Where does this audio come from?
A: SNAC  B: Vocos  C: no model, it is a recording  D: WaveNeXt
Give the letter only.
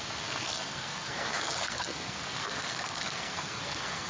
A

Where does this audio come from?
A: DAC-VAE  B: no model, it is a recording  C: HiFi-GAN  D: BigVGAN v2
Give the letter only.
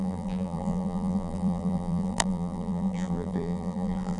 D